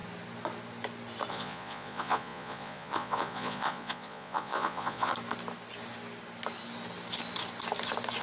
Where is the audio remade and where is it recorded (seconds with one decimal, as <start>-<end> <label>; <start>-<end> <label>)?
0.0-1.3 recorded; 1.3-5.1 remade; 5.1-8.2 recorded